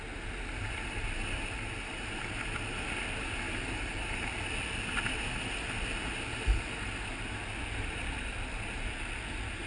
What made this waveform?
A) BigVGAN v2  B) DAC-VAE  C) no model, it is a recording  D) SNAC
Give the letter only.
C